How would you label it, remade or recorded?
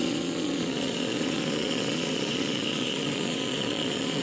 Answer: remade